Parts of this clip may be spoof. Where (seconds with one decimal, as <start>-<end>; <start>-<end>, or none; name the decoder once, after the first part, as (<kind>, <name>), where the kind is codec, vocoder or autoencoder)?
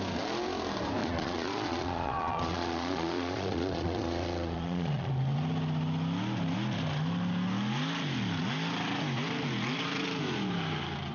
1.0-5.1 (vocoder, Vocos)